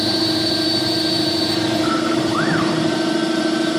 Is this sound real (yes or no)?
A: no